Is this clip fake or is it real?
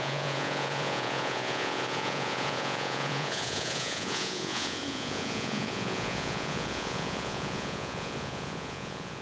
fake